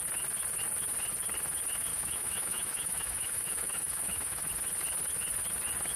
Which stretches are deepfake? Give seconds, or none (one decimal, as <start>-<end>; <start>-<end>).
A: 1.9-4.5